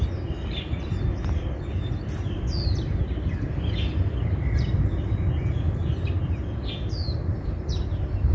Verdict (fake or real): real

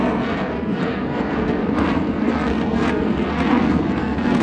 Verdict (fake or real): fake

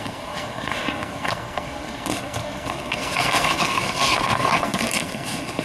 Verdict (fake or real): fake